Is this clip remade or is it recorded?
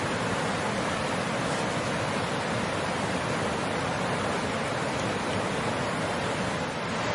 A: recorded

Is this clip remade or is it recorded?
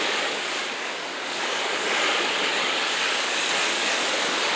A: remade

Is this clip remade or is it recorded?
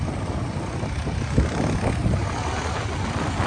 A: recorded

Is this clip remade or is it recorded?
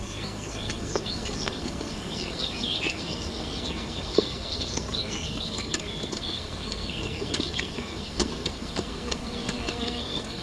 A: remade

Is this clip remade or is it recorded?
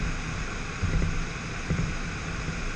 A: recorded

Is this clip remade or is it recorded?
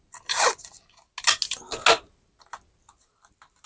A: recorded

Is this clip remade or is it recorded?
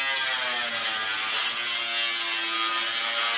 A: recorded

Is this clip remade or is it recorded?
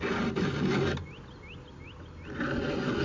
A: recorded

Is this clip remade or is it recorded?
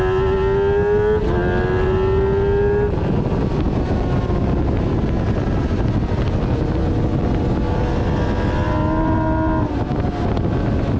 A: recorded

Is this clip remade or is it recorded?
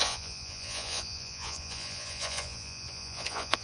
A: remade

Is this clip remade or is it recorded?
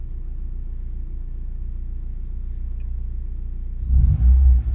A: recorded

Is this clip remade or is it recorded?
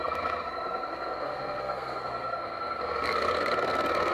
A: remade